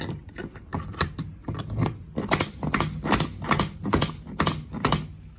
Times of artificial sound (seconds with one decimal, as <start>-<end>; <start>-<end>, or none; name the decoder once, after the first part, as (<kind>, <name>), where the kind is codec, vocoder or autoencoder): none